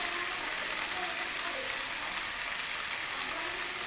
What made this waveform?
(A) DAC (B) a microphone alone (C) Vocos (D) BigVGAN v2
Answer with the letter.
B